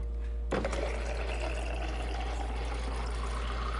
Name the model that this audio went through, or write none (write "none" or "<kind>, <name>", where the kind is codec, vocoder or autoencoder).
none